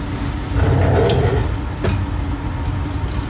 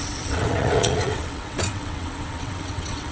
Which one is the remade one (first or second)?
second